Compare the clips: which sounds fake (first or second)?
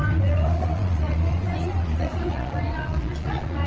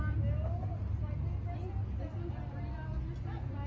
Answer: first